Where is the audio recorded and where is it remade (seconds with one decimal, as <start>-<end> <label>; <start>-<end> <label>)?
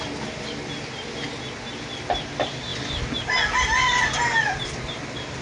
0.0-5.4 recorded